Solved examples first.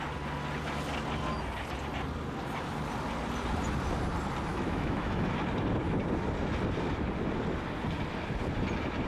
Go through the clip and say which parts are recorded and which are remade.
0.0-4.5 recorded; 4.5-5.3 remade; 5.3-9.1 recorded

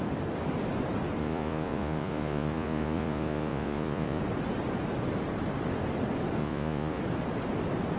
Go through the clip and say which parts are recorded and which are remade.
0.0-1.2 recorded; 1.2-4.2 remade; 4.2-6.4 recorded; 6.4-7.0 remade; 7.0-8.0 recorded

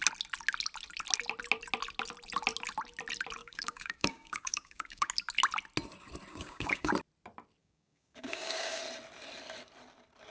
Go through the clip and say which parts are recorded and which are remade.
0.0-3.4 recorded; 3.4-5.1 remade; 5.1-6.3 recorded; 6.3-6.9 remade; 6.9-7.6 recorded; 7.6-8.8 remade; 8.8-10.3 recorded

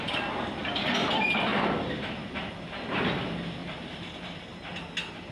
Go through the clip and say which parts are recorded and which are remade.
0.0-0.6 recorded; 0.6-1.1 remade; 1.1-3.6 recorded; 3.6-4.3 remade; 4.3-5.3 recorded